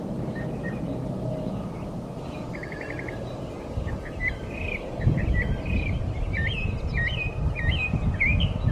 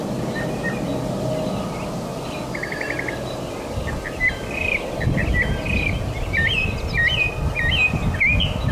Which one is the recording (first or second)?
second